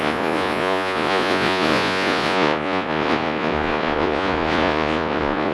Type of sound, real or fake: fake